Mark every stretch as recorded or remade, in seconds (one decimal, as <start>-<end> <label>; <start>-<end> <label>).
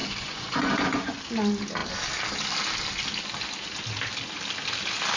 0.0-1.2 remade; 1.2-5.2 recorded